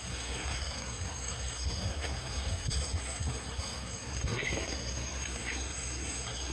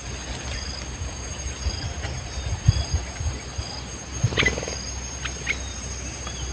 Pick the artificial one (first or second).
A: first